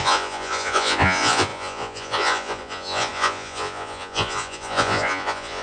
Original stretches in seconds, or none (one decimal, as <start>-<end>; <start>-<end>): none